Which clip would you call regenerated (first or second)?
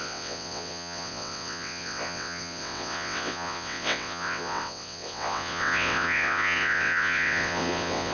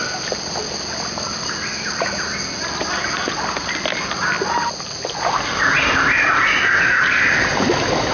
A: first